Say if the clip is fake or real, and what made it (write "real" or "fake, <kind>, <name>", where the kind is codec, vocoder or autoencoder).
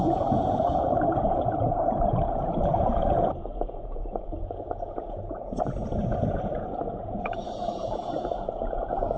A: fake, vocoder, Vocos